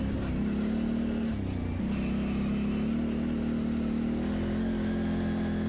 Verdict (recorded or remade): recorded